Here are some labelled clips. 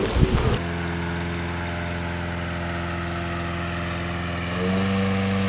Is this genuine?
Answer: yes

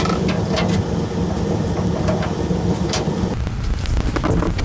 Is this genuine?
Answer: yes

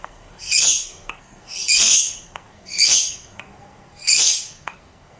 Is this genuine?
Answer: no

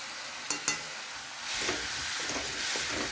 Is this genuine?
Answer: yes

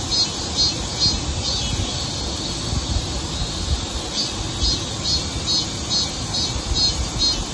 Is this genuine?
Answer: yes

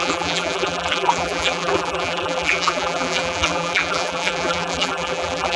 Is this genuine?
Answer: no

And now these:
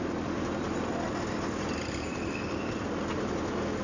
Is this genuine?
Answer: yes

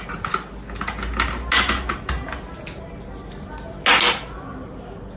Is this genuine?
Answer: yes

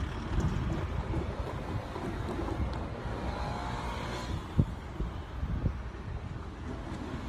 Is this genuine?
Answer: yes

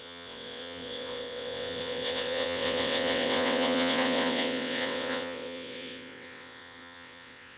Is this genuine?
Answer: no